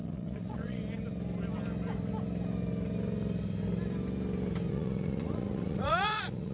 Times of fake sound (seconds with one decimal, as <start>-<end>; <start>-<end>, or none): 0.0-0.8; 4.7-6.5